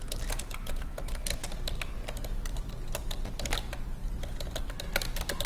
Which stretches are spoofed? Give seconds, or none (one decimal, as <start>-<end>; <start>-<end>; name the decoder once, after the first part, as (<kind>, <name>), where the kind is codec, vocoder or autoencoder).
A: none